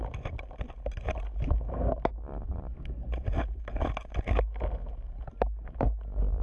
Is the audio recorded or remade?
recorded